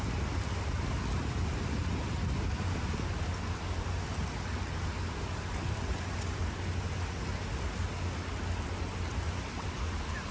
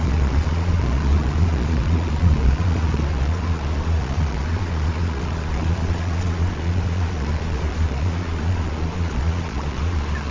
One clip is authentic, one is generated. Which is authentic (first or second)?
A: first